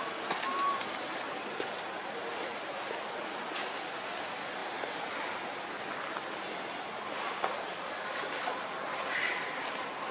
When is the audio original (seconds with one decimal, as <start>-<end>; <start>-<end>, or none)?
0.0-10.1

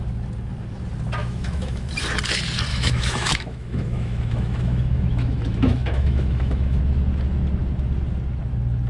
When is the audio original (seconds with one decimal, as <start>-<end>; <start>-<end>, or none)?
0.0-1.2; 1.9-2.7; 6.8-8.9

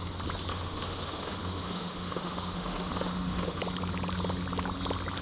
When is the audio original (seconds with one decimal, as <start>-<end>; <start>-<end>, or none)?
0.0-0.5; 3.6-5.2